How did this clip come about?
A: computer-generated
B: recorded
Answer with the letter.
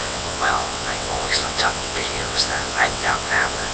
A